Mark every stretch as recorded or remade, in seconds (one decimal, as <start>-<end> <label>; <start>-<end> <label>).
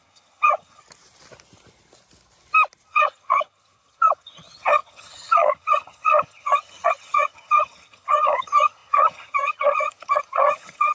0.0-0.8 remade; 0.8-2.9 recorded; 2.9-10.9 remade